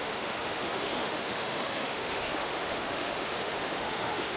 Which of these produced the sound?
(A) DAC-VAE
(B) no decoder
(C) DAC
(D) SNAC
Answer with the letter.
A